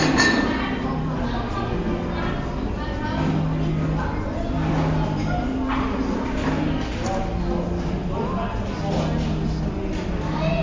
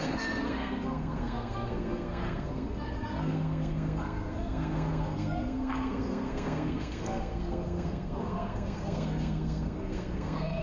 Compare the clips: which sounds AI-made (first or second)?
second